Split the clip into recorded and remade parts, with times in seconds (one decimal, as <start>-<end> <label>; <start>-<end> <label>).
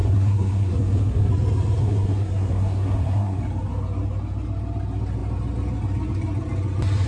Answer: 0.0-1.3 remade; 1.3-1.8 recorded; 1.8-3.4 remade; 3.4-7.1 recorded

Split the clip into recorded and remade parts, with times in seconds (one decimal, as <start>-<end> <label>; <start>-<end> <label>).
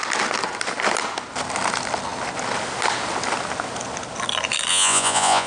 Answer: 0.0-4.7 recorded; 4.7-5.5 remade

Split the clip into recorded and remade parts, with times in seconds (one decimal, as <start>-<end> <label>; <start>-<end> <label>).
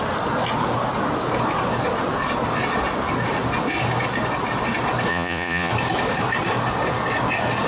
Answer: 0.0-5.1 recorded; 5.1-5.7 remade; 5.7-7.7 recorded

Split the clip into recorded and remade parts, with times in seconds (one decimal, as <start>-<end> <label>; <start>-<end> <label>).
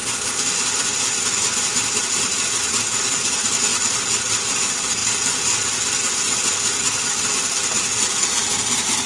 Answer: 0.0-2.5 remade; 2.5-9.1 recorded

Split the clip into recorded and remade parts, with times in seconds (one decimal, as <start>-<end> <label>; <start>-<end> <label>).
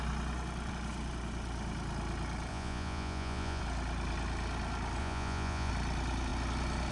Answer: 0.0-2.5 recorded; 2.5-3.6 remade; 3.6-5.0 recorded; 5.0-5.7 remade; 5.7-6.9 recorded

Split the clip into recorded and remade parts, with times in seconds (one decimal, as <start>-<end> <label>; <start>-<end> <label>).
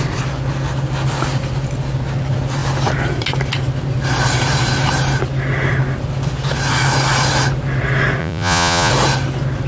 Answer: 0.0-8.2 recorded; 8.2-8.9 remade; 8.9-9.7 recorded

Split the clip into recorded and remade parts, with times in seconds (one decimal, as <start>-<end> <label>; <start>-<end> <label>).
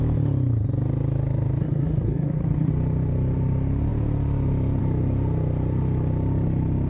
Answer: 0.0-1.6 recorded; 1.6-2.7 remade; 2.7-6.9 recorded